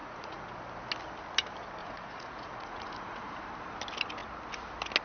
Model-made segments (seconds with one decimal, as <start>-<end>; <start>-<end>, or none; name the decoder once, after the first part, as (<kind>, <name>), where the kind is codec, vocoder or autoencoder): 0.0-0.5 (vocoder, Vocos); 1.8-3.4